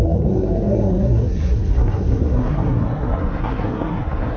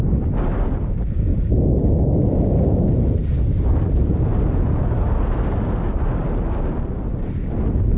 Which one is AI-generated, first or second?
first